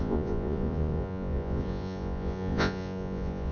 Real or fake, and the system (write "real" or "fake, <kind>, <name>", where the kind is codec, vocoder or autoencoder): fake, vocoder, Vocos